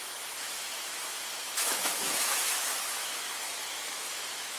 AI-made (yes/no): yes